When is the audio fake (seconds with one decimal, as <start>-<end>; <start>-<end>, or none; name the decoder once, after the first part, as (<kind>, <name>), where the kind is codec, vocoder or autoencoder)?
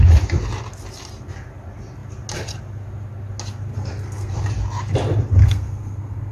3.7-4.3 (codec, SNAC); 5.4-6.3